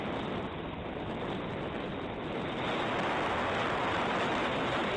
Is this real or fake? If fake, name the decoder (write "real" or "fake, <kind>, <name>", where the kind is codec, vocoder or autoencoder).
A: real